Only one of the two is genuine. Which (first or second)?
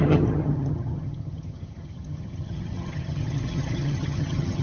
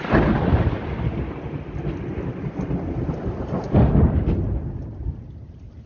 second